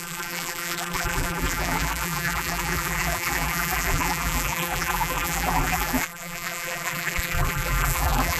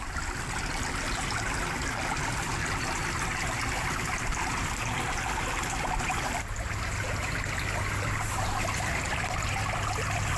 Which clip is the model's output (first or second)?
first